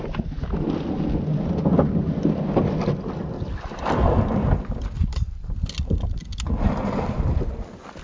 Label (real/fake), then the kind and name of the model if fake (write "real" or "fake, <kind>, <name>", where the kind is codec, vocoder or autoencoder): real